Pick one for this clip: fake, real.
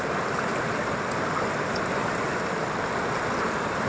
real